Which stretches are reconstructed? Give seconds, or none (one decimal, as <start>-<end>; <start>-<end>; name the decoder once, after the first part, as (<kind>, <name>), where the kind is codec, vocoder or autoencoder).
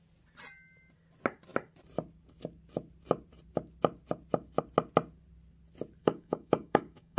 6.0-7.2 (codec, DAC)